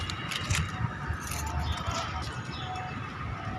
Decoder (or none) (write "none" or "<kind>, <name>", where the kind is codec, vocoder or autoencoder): none